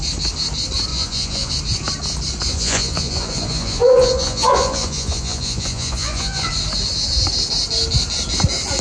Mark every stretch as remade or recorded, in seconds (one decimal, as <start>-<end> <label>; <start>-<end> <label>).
0.0-0.9 recorded; 0.9-1.5 remade; 1.5-2.5 recorded; 2.5-6.5 remade; 6.5-8.8 recorded